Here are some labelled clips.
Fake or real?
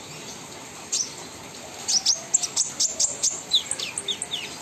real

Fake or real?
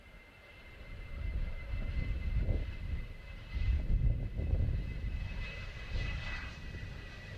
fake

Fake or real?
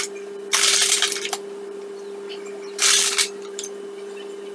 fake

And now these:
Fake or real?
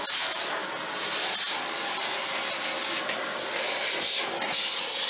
real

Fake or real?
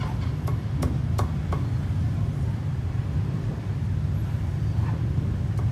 real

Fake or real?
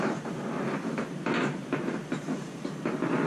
fake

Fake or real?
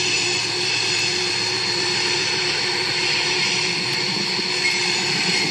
fake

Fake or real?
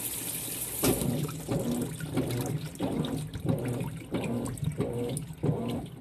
real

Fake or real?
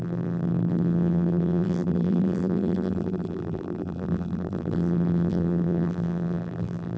fake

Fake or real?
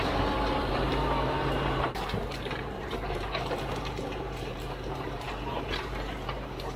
fake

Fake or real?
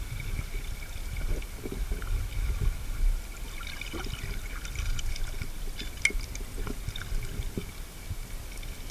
real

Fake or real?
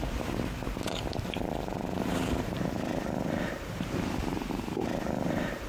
fake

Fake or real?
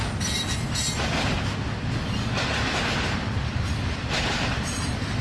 real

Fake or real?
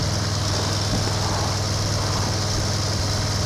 real